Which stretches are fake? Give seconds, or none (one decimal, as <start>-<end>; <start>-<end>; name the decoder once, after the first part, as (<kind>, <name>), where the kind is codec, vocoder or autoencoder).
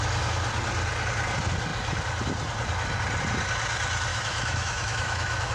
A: 4.1-5.5 (autoencoder, DAC-VAE)